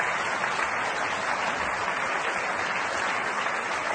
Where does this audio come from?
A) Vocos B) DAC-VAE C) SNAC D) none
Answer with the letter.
D